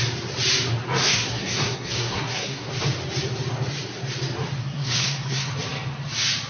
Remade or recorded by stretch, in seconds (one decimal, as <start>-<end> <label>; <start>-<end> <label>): 0.0-1.0 recorded; 1.0-2.7 remade; 2.7-4.6 recorded; 4.6-5.5 remade; 5.5-6.5 recorded